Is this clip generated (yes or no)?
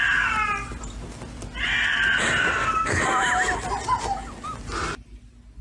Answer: no